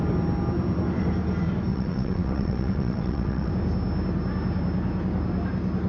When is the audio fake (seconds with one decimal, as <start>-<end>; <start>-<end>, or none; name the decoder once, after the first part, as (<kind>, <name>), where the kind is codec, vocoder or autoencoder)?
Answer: 1.7-3.5 (vocoder, WaveNeXt)